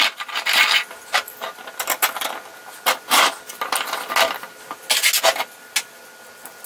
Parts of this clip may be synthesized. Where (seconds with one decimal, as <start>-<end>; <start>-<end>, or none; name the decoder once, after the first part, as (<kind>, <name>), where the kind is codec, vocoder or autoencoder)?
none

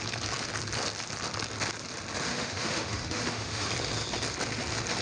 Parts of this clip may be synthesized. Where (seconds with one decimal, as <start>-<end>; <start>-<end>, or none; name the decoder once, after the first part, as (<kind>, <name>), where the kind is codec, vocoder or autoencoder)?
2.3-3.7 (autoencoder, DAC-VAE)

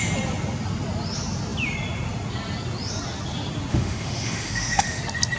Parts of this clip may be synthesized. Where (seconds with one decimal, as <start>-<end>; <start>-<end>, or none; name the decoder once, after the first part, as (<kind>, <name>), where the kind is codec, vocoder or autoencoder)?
3.7-5.0 (autoencoder, DAC-VAE)